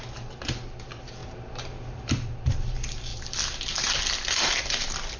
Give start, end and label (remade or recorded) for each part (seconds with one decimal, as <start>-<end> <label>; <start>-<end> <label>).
0.0-3.1 remade; 3.1-4.6 recorded; 4.6-5.2 remade